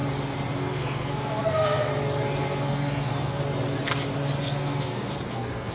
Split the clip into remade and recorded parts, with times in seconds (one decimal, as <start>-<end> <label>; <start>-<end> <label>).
0.0-0.6 recorded; 0.6-1.9 remade; 1.9-2.4 recorded; 2.4-3.4 remade; 3.4-4.4 recorded; 4.4-5.7 remade